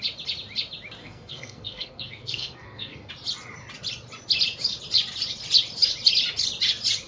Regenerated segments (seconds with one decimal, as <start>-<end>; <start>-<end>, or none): 1.0-3.1